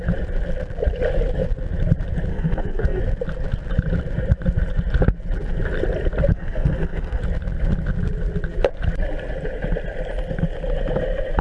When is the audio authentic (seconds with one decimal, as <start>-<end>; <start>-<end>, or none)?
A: 0.0-2.3; 3.0-6.3; 7.2-11.4